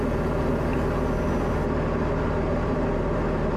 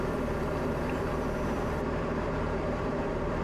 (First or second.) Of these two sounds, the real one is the first